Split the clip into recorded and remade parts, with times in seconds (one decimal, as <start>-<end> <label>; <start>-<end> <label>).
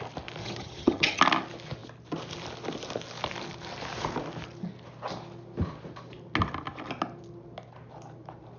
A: 0.0-0.4 recorded; 0.4-1.2 remade; 1.2-8.6 recorded